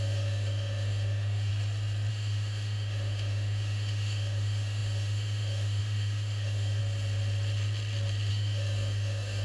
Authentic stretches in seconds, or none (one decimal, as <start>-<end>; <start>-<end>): 1.5-2.1; 6.8-8.3

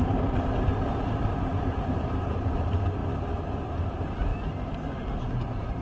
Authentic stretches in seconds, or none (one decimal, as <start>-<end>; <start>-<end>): 0.7-1.4; 3.0-3.6; 4.3-5.2